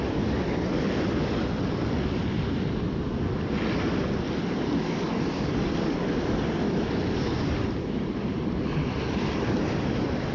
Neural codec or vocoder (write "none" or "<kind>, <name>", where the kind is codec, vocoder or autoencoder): none